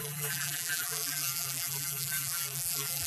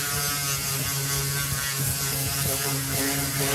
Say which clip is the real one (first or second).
second